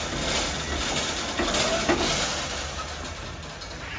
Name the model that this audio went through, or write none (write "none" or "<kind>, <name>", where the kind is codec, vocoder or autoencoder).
none